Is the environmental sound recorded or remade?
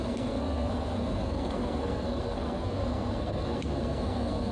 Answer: remade